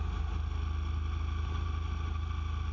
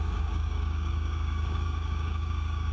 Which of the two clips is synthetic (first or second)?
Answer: second